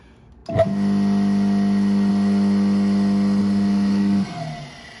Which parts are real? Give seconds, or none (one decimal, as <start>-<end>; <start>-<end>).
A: 0.0-3.4; 4.4-5.0